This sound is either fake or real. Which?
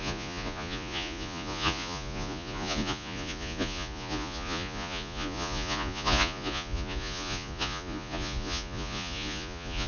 fake